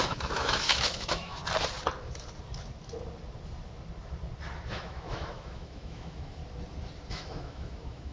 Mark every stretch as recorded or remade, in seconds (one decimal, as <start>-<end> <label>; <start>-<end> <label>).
0.0-1.4 remade; 1.4-4.7 recorded; 4.7-6.4 remade; 6.4-7.1 recorded; 7.1-8.1 remade